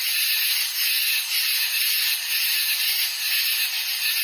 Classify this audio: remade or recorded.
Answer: remade